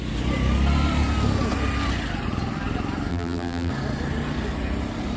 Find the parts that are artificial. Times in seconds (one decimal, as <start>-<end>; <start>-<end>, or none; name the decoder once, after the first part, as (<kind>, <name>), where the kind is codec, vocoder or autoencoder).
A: 3.1-3.7 (vocoder, BigVGAN v2)